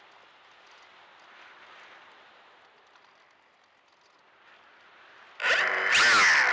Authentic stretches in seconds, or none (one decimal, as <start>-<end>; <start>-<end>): 0.0-6.5